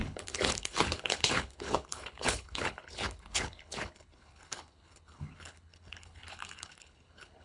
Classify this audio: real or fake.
fake